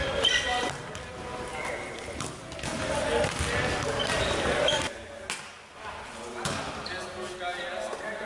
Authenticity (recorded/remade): recorded